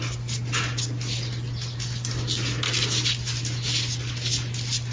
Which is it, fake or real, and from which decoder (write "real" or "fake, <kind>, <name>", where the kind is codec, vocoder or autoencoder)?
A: real